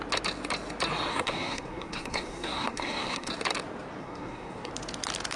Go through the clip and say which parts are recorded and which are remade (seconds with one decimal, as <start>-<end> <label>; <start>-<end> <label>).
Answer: 0.0-1.1 recorded; 1.1-3.3 remade; 3.3-4.0 recorded; 4.0-4.7 remade; 4.7-5.4 recorded